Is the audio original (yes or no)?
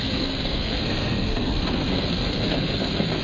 no